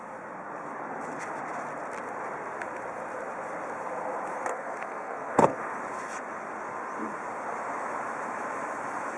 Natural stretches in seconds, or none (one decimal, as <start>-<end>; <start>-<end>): 0.0-4.5; 5.6-9.2